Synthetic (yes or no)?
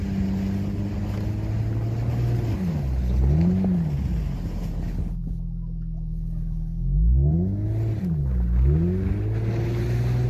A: no